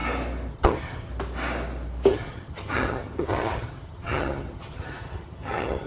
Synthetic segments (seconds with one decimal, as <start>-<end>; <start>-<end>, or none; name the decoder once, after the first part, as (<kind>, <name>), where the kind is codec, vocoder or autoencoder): 0.5-1.1 (vocoder, HiFi-GAN); 2.1-5.9